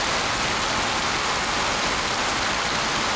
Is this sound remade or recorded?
recorded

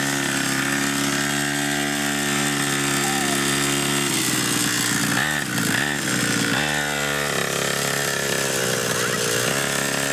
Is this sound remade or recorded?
recorded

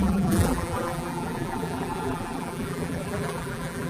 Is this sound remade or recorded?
remade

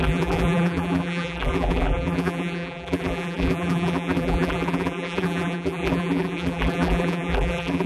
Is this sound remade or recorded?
remade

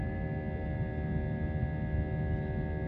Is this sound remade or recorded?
recorded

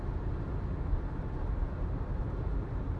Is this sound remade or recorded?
recorded